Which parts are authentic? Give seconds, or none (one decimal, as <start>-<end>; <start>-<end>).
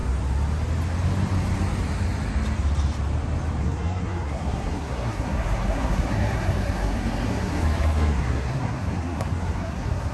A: 0.0-3.6